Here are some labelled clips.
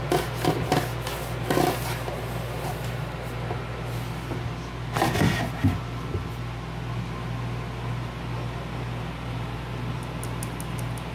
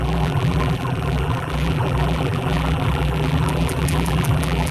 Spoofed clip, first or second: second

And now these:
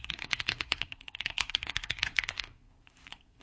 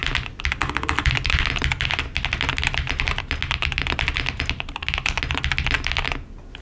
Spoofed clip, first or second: first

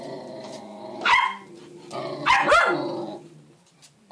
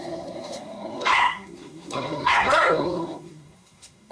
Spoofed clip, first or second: second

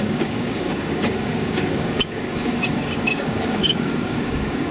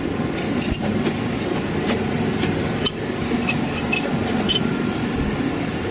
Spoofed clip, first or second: first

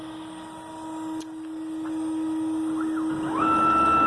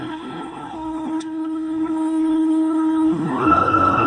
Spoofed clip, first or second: second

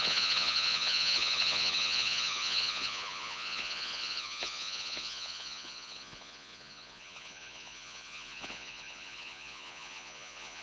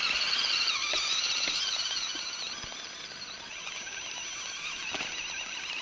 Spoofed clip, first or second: first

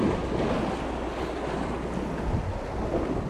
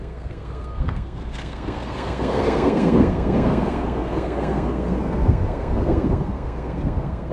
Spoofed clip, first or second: second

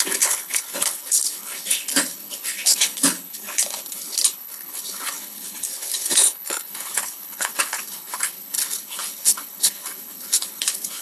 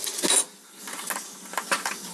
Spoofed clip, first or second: first